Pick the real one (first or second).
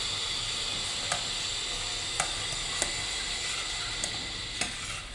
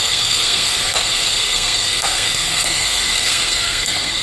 first